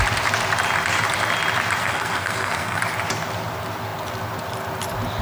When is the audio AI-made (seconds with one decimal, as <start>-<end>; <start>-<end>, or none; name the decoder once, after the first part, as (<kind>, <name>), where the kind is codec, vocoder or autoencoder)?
1.8-2.8 (codec, SNAC)